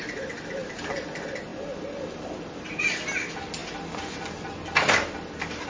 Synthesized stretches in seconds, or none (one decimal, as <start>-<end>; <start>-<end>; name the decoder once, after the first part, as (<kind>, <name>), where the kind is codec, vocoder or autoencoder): none